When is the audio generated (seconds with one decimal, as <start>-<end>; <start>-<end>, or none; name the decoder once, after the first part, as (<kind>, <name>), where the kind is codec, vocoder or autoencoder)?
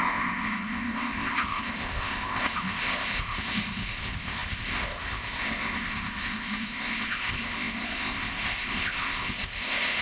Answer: 0.0-10.0 (codec, ZipCodec)